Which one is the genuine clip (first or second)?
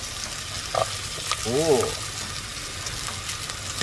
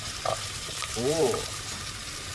first